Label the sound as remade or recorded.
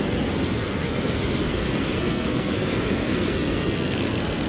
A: remade